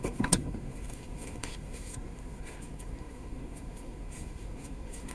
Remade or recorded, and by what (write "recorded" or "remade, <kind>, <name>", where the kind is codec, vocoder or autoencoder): remade, codec, SNAC